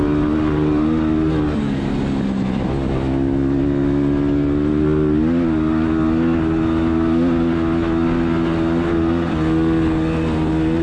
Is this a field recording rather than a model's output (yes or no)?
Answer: yes